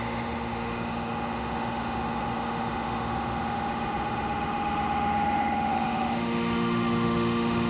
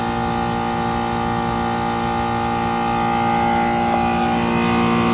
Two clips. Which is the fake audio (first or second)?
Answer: first